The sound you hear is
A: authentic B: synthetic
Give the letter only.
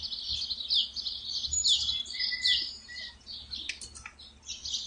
A